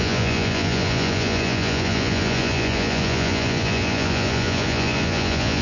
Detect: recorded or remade remade